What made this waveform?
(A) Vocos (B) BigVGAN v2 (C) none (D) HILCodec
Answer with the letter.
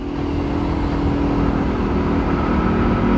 C